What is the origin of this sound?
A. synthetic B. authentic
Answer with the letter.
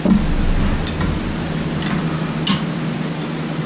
B